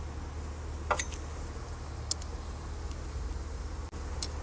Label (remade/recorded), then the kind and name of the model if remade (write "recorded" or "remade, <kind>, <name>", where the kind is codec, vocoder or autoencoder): recorded